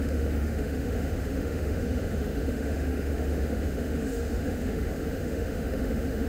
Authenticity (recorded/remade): remade